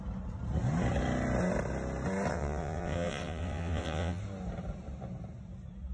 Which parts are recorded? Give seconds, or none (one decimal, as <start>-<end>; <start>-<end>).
0.0-2.3; 4.2-5.9